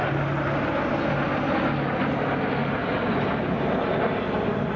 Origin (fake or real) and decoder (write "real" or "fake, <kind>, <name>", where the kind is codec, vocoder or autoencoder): real